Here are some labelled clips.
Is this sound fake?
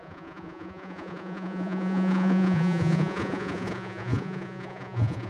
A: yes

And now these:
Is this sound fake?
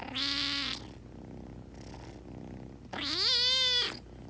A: no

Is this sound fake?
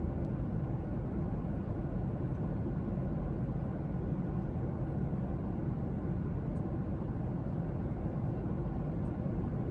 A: no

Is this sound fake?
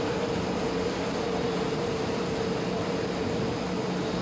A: no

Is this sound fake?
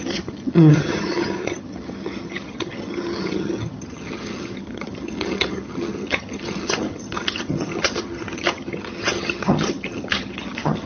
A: yes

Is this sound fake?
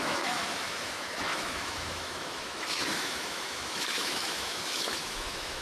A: yes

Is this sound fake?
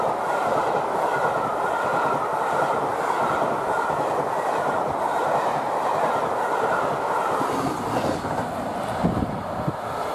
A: no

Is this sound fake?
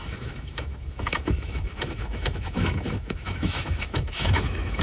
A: yes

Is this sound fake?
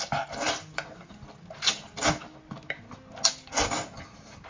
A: no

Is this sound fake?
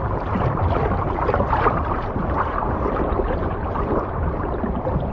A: yes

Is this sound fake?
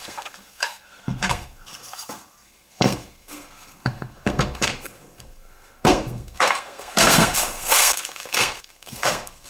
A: yes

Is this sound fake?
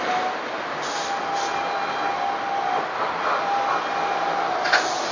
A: no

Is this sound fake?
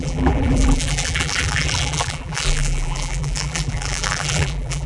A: yes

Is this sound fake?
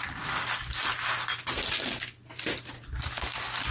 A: no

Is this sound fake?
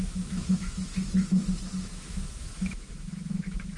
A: yes